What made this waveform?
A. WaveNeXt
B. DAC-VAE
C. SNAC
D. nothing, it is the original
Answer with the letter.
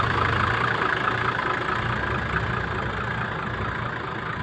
D